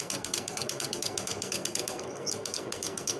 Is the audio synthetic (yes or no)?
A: yes